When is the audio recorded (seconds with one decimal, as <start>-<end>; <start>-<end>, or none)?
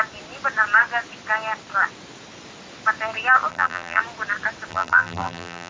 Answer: 0.0-3.5; 4.0-4.7